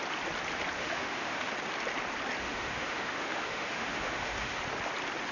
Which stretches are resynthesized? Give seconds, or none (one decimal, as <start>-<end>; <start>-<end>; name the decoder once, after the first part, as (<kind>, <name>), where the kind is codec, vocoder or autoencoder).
0.8-1.5 (autoencoder, DAC-VAE); 2.4-4.6